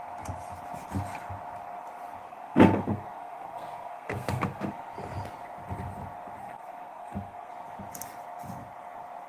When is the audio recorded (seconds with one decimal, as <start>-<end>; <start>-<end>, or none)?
0.0-2.3; 4.7-6.4; 7.5-9.3